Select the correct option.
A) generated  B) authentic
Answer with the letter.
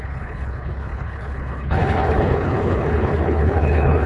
A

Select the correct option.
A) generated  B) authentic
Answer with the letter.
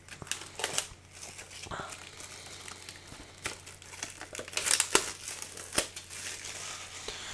B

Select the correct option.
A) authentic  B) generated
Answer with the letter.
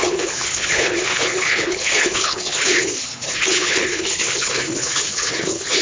B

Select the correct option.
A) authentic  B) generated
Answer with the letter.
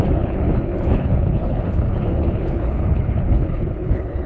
B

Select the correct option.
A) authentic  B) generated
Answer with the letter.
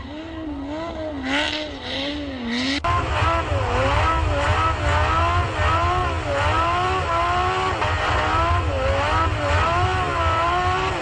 A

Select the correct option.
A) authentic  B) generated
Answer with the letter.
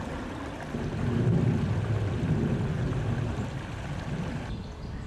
A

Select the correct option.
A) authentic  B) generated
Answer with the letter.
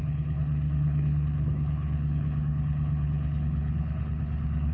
B